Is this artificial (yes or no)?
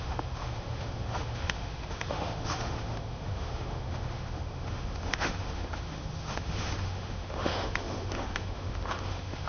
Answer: yes